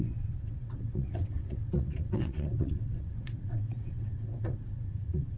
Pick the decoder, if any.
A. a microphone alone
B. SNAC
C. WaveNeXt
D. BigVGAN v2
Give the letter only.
C